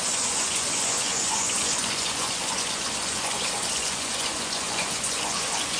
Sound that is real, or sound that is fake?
fake